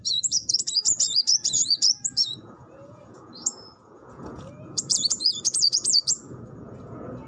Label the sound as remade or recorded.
remade